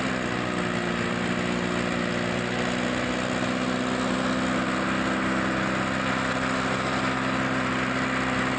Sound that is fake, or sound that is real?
real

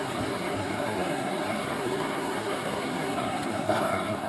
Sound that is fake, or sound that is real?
fake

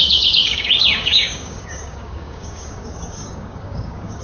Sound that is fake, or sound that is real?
fake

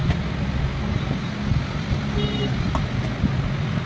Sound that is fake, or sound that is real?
real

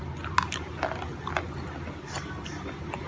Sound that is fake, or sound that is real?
real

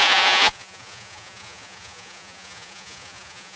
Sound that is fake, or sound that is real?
fake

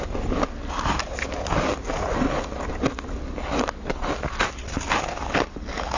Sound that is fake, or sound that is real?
real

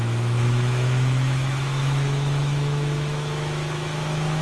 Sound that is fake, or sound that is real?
fake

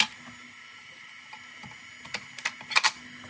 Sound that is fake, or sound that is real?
real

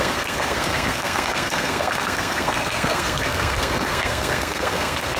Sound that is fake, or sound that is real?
fake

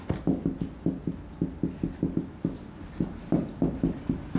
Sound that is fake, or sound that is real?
real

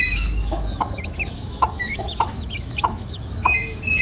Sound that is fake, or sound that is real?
fake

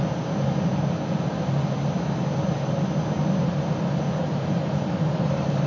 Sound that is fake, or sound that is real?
real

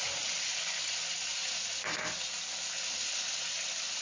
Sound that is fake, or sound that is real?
real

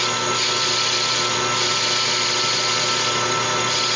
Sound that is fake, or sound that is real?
real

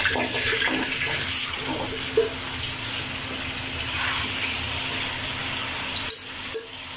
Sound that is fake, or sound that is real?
real